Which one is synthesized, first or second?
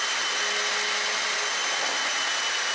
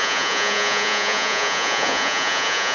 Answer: second